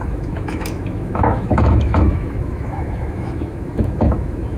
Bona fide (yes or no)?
no